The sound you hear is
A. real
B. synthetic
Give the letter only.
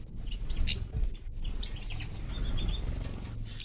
A